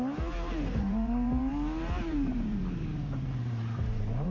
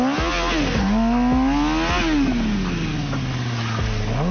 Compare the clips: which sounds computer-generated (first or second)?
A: first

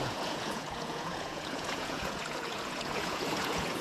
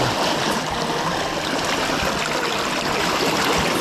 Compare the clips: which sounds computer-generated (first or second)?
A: first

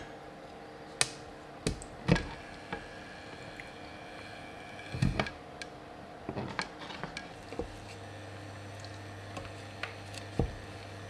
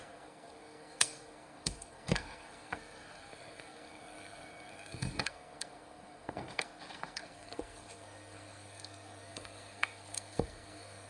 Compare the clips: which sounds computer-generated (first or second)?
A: second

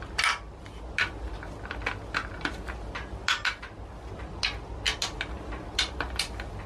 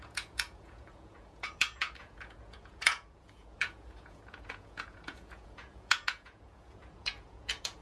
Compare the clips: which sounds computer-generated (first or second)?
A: second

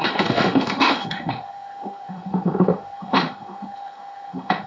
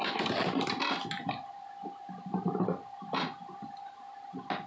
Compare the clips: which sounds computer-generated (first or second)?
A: first